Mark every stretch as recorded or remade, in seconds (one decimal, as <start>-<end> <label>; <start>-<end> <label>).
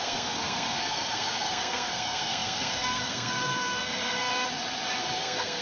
0.0-4.3 remade; 4.3-5.0 recorded; 5.0-5.6 remade